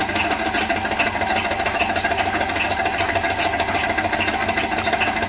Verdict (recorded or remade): recorded